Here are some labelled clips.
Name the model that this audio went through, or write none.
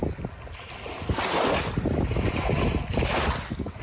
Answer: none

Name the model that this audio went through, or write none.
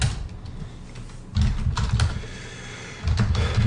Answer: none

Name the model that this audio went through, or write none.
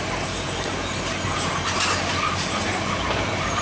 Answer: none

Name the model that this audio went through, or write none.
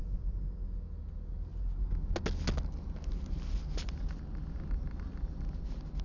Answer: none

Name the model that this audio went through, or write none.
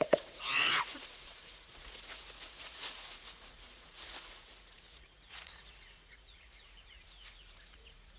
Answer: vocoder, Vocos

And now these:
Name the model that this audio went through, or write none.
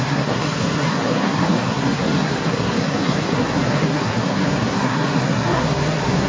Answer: codec, SNAC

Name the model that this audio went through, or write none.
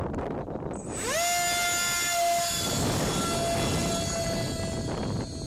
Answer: none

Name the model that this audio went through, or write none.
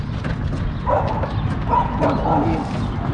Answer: none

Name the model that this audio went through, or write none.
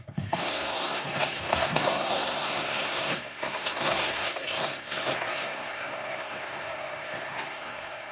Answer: codec, SNAC